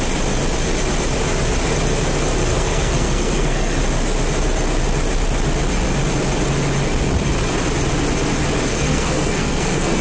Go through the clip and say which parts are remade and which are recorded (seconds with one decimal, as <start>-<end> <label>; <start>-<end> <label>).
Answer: 0.0-2.5 recorded; 2.5-3.8 remade; 3.8-8.7 recorded; 8.7-10.0 remade